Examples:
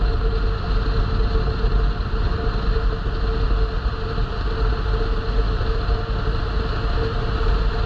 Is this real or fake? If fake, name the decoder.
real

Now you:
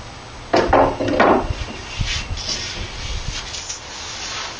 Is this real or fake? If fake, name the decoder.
real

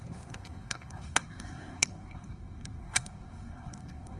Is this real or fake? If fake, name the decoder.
fake, codec, SNAC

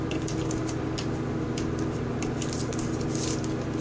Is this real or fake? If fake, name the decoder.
real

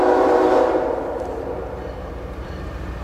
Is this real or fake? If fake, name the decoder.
fake, vocoder, BigVGAN v2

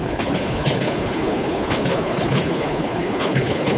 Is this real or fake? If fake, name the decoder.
fake, codec, HILCodec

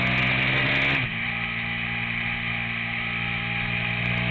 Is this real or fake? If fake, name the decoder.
real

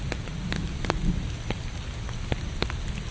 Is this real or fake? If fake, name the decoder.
real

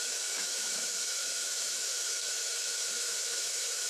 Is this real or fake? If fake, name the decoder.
fake, autoencoder, DAC-VAE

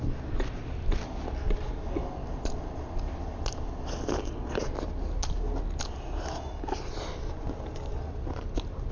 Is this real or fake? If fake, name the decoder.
real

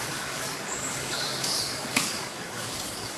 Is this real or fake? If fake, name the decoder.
fake, codec, DAC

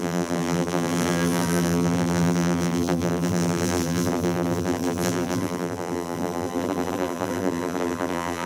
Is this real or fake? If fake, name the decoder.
fake, vocoder, BigVGAN v2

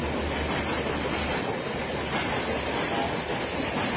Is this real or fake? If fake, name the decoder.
real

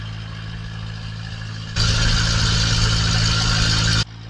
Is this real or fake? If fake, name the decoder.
real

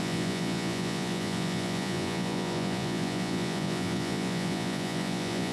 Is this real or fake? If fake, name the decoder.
fake, vocoder, Vocos